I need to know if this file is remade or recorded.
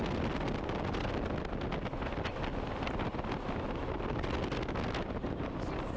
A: recorded